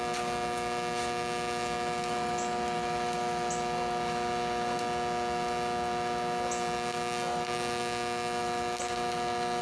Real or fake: real